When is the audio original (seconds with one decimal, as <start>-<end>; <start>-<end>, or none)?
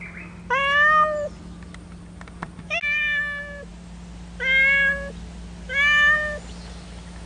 0.0-7.3